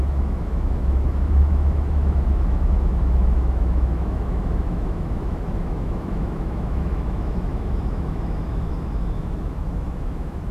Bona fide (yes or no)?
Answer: no